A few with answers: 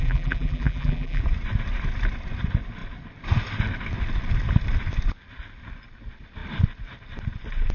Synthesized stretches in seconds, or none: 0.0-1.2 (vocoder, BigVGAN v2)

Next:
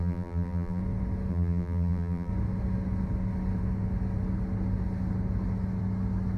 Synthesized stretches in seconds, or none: 0.0-0.8 (vocoder, BigVGAN v2); 1.3-2.3

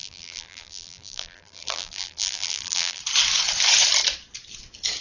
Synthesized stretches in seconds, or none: 0.0-3.0 (vocoder, BigVGAN v2)

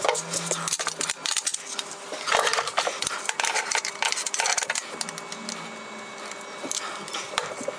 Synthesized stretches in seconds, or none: 1.5-2.7 (vocoder, BigVGAN v2); 7.1-7.8

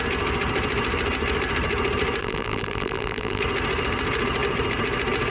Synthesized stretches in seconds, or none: 2.2-3.4 (vocoder, BigVGAN v2)

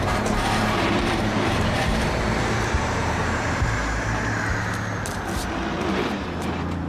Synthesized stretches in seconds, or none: 0.0-3.8 (vocoder, BigVGAN v2); 5.8-6.9

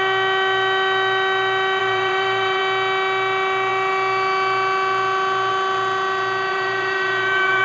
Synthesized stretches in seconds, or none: 1.8-2.6 (vocoder, BigVGAN v2); 6.5-7.6

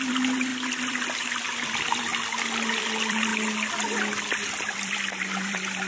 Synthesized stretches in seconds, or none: 0.0-2.1 (vocoder, BigVGAN v2); 2.8-3.3; 4.5-5.9